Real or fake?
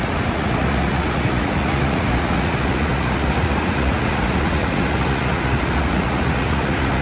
fake